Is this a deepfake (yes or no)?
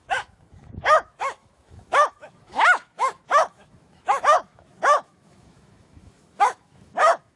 yes